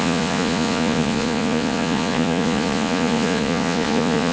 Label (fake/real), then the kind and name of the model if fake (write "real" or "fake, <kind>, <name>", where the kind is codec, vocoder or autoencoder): fake, vocoder, Vocos